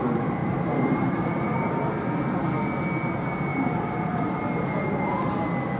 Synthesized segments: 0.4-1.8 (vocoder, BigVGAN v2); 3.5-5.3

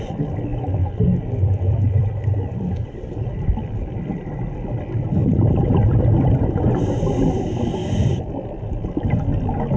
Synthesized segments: 0.5-4.2 (vocoder, BigVGAN v2)

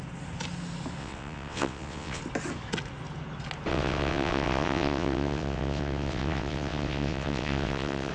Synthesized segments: 1.0-2.2 (vocoder, WaveNeXt); 3.7-8.1